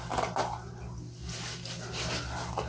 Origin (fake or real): real